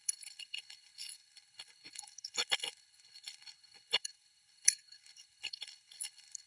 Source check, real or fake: fake